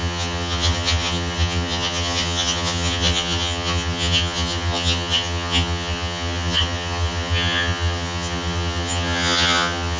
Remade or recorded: remade